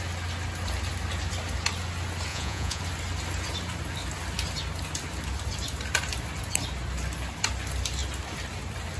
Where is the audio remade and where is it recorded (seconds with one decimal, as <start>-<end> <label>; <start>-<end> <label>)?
0.0-2.3 recorded; 2.3-2.8 remade; 2.8-9.0 recorded